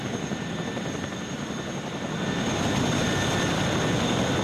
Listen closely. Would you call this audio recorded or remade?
recorded